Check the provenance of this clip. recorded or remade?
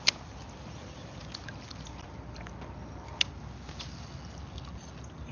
recorded